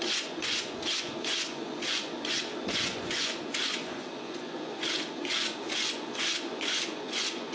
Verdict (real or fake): fake